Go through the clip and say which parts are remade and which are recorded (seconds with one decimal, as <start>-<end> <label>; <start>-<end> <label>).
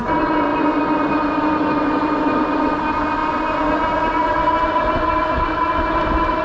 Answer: 0.0-6.4 recorded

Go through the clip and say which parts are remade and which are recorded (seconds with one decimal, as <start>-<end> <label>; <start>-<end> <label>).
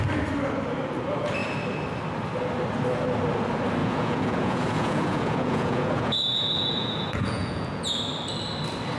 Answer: 0.0-3.8 recorded; 3.8-8.0 remade; 8.0-9.0 recorded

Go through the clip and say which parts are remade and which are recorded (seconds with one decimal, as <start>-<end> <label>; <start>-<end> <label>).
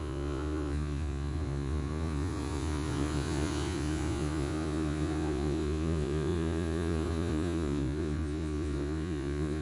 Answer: 0.0-9.6 remade